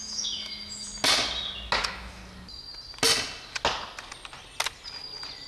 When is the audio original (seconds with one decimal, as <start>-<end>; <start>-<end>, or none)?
0.9-1.8; 2.2-5.5